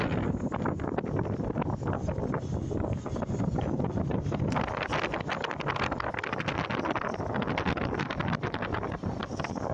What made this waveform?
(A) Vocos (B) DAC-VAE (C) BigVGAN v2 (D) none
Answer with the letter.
D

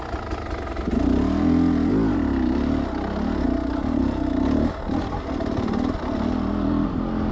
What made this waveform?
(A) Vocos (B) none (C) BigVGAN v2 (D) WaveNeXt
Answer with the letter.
B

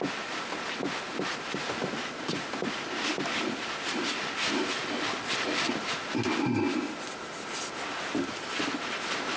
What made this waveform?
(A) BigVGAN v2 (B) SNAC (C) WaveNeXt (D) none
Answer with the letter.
D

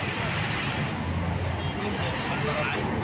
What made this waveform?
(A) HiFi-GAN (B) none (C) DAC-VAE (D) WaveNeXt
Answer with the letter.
B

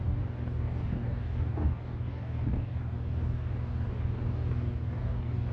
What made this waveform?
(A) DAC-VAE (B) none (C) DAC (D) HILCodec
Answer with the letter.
C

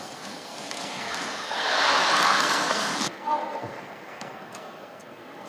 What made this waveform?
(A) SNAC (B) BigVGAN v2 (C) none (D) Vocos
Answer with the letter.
A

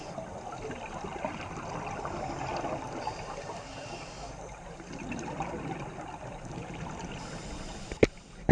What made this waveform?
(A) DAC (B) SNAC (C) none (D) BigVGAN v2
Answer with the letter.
C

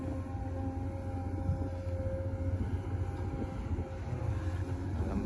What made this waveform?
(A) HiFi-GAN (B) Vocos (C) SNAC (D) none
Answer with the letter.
D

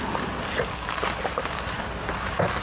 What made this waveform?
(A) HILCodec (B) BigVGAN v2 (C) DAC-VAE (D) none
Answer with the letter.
B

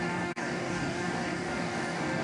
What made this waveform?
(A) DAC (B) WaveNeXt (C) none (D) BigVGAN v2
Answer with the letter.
A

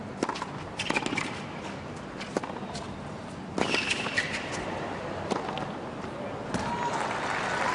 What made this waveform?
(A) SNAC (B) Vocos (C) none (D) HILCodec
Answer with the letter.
C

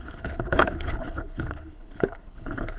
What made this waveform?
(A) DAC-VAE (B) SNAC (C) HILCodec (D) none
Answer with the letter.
C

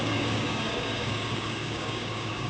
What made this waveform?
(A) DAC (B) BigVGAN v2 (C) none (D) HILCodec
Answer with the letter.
A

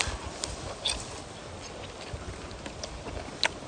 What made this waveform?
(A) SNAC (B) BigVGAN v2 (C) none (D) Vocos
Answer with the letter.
C